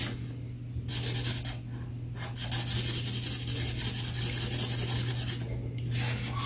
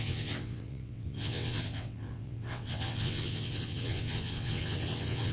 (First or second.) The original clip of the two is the first